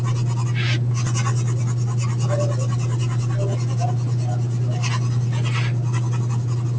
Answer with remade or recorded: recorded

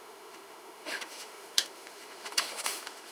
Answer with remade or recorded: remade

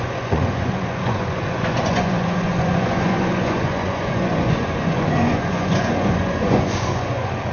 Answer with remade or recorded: remade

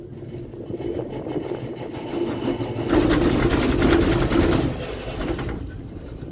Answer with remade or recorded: recorded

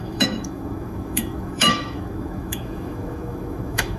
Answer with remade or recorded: remade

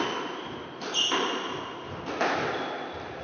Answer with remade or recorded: recorded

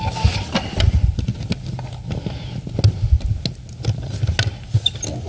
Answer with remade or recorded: recorded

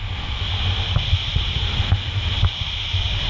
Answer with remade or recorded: recorded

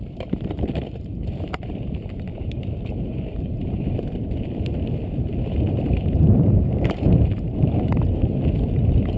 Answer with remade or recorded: remade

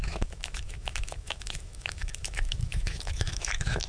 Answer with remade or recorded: remade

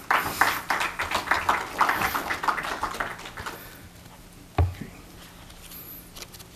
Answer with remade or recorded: recorded